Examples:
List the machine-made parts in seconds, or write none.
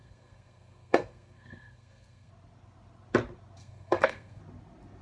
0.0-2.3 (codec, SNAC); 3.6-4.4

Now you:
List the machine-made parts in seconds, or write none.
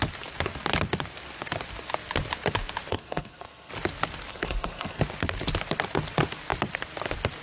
2.9-3.7 (codec, SNAC); 4.3-5.0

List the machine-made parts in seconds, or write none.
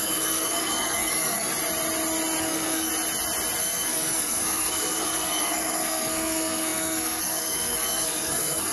0.0-1.5 (codec, SNAC); 2.4-2.9; 3.6-8.7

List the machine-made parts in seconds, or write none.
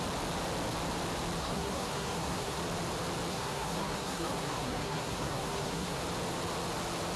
1.4-2.6 (codec, SNAC); 3.3-6.0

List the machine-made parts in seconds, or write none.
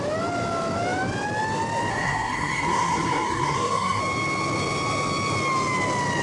1.9-4.0 (codec, SNAC)